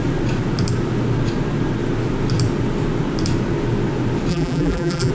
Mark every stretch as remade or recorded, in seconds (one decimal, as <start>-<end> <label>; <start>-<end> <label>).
0.0-4.3 recorded; 4.3-5.1 remade